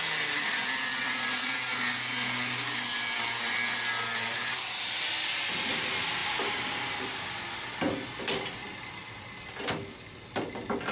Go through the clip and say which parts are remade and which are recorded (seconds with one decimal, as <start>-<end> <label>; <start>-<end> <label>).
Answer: 0.0-10.9 recorded